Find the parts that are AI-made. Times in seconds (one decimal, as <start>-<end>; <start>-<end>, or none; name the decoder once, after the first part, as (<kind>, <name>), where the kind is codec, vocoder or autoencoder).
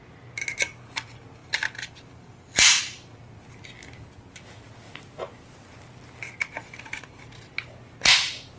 1.4-2.8 (vocoder, BigVGAN v2)